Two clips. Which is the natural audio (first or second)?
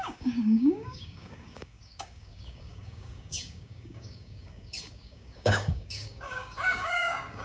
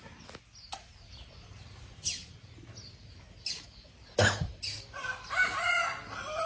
second